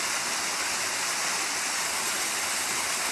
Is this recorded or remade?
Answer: recorded